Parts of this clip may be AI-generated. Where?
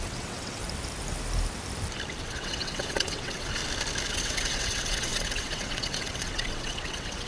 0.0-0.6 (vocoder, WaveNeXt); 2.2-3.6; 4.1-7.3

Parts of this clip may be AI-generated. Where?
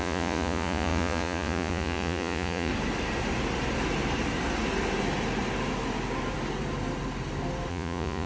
0.0-2.7 (vocoder, Vocos); 7.7-8.3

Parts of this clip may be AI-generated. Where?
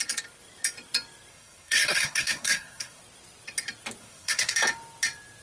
1.3-3.0 (codec, SNAC); 4.0-4.5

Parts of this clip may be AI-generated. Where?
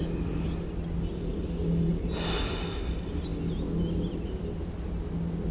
none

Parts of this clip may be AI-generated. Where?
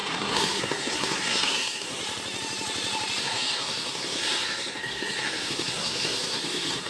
0.0-2.0 (codec, SNAC); 3.2-6.9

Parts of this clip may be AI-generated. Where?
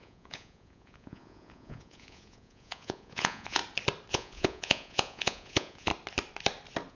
0.0-3.6 (vocoder, Vocos); 4.1-5.9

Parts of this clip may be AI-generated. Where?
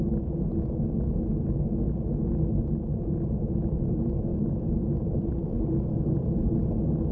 none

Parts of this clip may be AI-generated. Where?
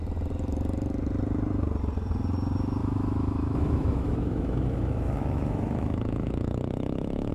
2.8-7.3 (autoencoder, DAC-VAE)